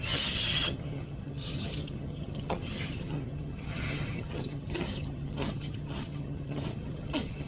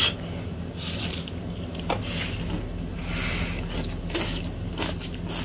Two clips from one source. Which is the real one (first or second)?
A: second